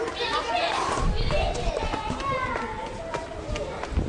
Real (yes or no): yes